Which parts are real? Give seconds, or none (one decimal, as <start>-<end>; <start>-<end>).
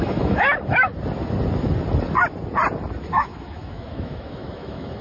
0.9-3.1